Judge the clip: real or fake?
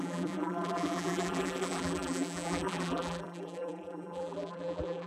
fake